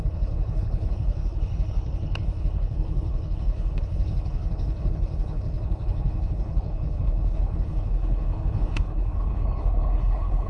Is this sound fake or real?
fake